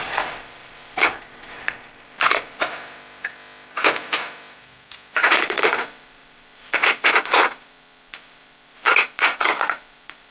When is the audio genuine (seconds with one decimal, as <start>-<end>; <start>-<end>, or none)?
2.6-5.1